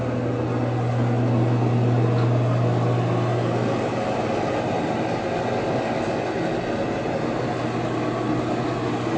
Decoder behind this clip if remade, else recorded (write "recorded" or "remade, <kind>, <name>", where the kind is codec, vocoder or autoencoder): recorded